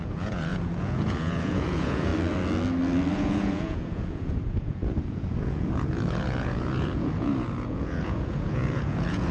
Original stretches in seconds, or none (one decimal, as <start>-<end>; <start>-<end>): 2.1-3.1